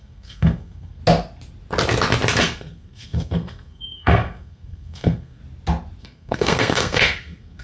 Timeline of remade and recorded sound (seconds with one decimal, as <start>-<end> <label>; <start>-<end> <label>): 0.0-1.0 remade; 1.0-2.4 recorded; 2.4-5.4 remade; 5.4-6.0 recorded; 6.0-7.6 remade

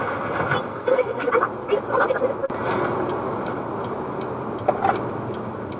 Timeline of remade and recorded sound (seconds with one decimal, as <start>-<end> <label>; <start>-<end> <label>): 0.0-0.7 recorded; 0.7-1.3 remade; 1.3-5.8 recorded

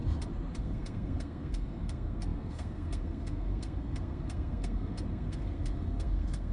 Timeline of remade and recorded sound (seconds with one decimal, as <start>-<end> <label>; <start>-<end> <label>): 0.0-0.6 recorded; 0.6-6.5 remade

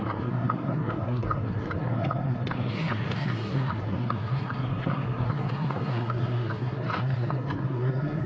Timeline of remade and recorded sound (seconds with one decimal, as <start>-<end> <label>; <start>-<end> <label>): 0.0-8.3 remade

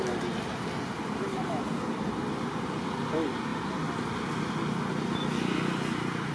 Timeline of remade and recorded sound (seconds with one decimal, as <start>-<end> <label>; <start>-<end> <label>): 0.0-6.3 recorded

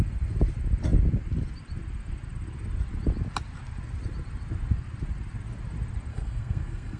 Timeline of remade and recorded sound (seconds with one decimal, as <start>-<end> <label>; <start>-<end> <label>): 0.0-6.1 recorded; 6.1-7.0 remade

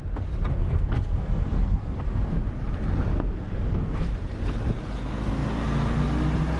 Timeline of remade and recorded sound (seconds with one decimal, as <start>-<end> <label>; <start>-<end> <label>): 0.0-0.5 recorded; 0.5-2.4 remade; 2.4-3.1 recorded; 3.1-4.1 remade; 4.1-6.6 recorded